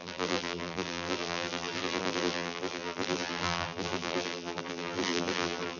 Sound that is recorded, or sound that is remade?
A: remade